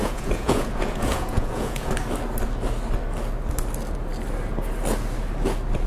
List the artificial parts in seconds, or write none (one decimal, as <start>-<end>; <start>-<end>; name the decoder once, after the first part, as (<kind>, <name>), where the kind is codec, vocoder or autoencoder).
0.0-1.9 (vocoder, Vocos)

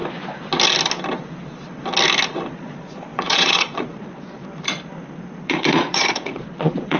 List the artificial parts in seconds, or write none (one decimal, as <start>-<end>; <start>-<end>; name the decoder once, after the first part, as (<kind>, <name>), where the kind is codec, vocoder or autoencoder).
2.4-4.4 (vocoder, Vocos); 5.4-7.0

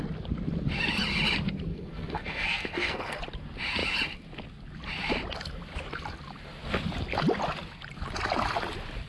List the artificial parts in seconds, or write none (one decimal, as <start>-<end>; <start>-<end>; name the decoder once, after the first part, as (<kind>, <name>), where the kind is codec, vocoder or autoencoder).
1.7-3.2 (codec, SNAC)

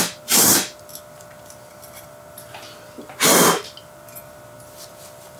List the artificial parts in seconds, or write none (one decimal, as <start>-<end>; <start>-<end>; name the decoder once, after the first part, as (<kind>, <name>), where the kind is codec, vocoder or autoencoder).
none